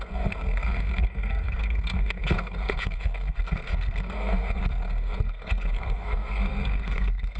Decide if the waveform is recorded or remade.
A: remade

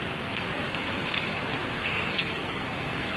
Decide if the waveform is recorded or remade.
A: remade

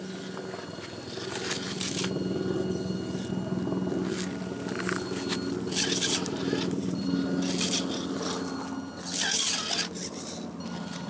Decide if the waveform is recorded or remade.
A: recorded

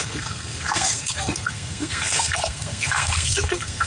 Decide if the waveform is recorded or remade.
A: remade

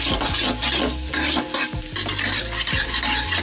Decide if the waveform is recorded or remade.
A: recorded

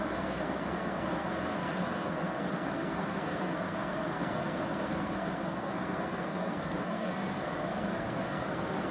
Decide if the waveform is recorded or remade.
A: remade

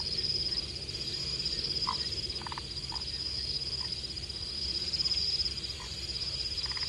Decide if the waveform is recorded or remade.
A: recorded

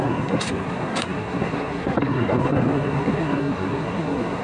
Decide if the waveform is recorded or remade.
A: remade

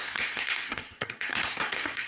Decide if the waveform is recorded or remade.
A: remade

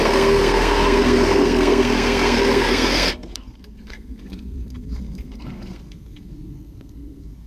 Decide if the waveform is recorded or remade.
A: remade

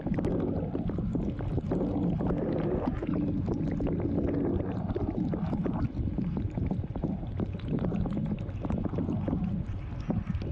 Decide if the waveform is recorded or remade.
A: recorded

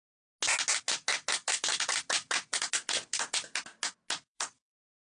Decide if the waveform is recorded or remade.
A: recorded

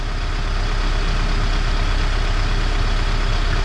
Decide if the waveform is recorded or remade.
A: recorded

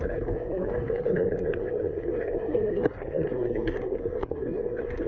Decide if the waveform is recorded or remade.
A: remade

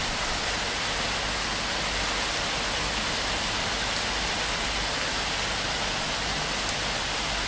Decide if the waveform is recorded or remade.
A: recorded